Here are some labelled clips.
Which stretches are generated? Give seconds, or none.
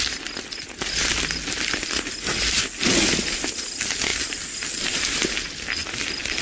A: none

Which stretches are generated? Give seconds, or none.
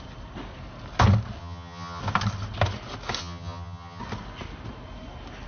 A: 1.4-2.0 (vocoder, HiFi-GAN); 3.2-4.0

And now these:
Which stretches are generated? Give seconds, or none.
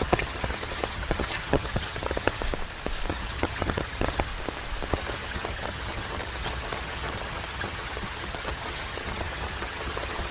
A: 0.0-2.4 (vocoder, HiFi-GAN); 3.1-4.3; 4.9-10.3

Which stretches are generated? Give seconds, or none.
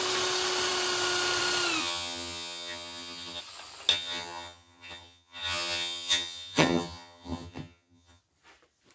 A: 1.8-3.4 (vocoder, HiFi-GAN); 3.9-8.2